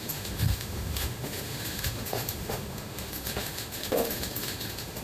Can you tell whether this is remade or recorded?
remade